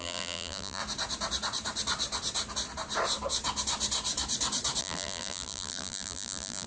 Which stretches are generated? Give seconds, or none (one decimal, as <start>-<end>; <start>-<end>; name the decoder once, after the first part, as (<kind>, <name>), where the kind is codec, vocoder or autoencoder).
0.0-0.8 (vocoder, BigVGAN v2); 4.8-6.7